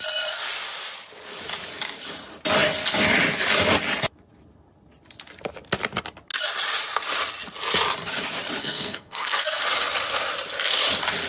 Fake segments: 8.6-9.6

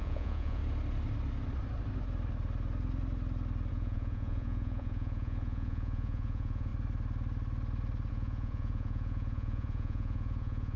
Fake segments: 0.0-0.6; 3.7-6.7; 8.1-10.8

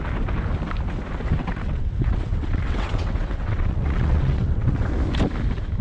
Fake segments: 1.4-4.9

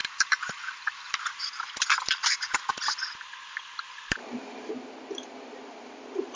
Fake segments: 0.0-1.4; 4.2-4.7

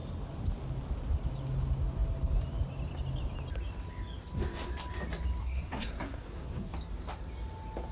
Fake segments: 5.4-6.7

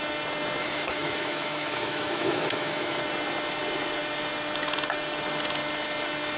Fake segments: 0.6-3.0